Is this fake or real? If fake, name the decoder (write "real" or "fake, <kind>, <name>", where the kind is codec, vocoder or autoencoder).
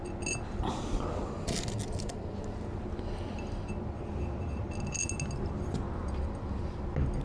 real